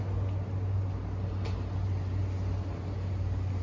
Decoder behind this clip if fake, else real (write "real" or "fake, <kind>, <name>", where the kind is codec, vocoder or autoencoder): real